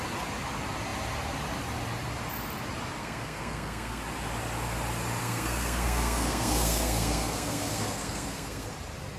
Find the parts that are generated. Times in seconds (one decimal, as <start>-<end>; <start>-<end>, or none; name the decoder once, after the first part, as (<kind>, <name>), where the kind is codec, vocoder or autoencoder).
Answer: 3.0-4.0 (codec, SNAC); 5.2-8.7